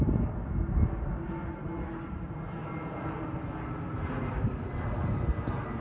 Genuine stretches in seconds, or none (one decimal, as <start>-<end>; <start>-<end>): 0.0-5.8